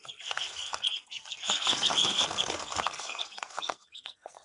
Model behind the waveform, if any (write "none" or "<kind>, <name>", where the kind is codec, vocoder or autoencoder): codec, SNAC